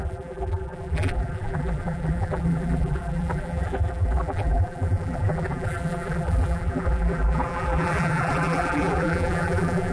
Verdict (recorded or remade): remade